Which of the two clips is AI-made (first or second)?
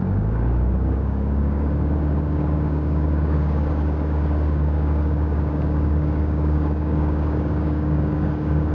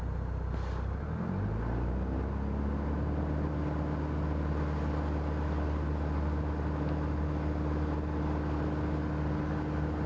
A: first